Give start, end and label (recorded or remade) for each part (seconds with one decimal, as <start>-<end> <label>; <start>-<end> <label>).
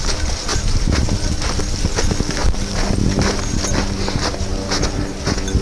0.0-5.6 recorded